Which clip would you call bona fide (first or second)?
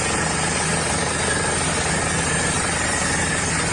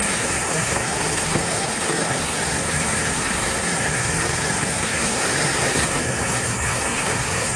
first